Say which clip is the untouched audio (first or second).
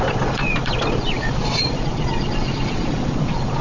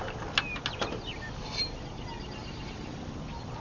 second